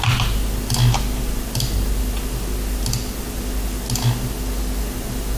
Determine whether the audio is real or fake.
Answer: real